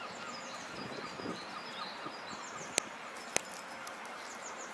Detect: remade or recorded recorded